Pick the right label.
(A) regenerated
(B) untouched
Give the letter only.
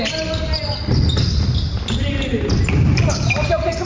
B